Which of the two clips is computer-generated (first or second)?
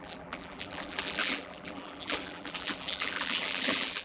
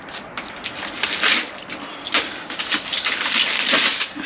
first